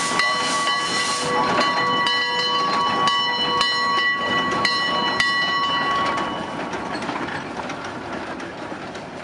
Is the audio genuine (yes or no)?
yes